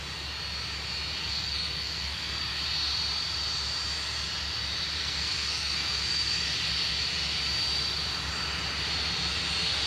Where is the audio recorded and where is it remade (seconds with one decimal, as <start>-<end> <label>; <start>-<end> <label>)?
0.0-1.2 recorded; 1.2-2.4 remade; 2.4-5.0 recorded; 5.0-6.3 remade; 6.3-9.9 recorded